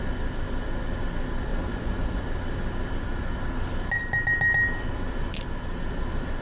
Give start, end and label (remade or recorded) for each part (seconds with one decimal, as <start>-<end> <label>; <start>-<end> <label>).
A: 0.0-1.5 recorded; 1.5-2.2 remade; 2.2-6.4 recorded